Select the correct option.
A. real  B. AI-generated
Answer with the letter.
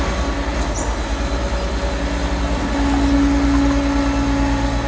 A